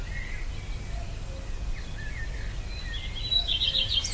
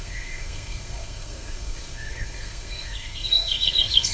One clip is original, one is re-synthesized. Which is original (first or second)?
first